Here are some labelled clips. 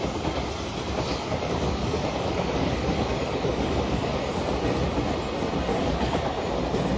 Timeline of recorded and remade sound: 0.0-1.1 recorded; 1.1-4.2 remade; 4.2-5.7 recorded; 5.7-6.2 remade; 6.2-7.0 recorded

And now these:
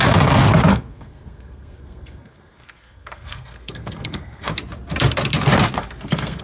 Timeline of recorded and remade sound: 0.0-0.7 recorded; 0.7-4.5 remade; 4.5-5.8 recorded; 5.8-6.4 remade

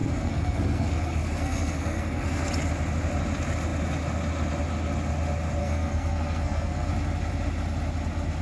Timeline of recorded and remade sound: 0.0-2.5 remade; 2.5-5.6 recorded; 5.6-6.9 remade; 6.9-8.4 recorded

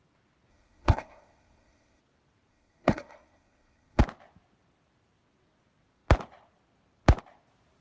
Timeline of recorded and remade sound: 0.0-0.5 recorded; 0.5-2.0 remade; 2.0-2.5 recorded; 2.5-4.0 remade; 4.0-7.8 recorded

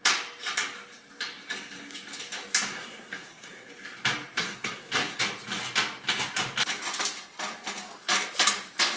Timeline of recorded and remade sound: 0.0-2.7 recorded; 2.7-3.7 remade; 3.7-4.4 recorded; 4.4-5.2 remade; 5.2-9.0 recorded

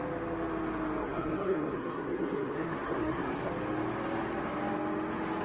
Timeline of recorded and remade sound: 0.0-1.0 recorded; 1.0-3.5 remade; 3.5-5.4 recorded